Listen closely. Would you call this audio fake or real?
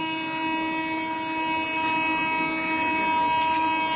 real